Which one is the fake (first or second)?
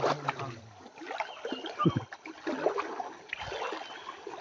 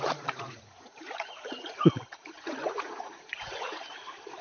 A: second